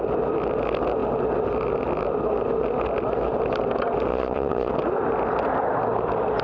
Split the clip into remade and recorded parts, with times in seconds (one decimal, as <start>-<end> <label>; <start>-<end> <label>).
0.0-4.1 recorded; 4.1-4.7 remade; 4.7-6.4 recorded